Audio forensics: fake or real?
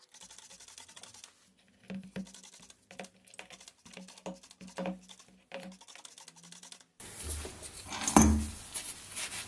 real